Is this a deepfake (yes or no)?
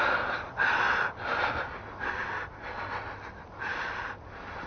no